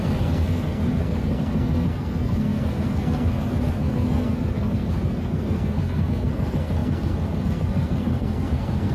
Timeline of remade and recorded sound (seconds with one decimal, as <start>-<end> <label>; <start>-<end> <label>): 0.0-8.9 remade